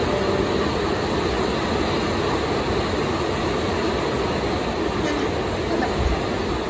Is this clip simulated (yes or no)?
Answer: no